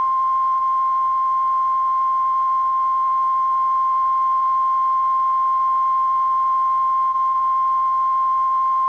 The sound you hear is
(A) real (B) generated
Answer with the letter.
A